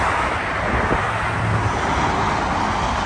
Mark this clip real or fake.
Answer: real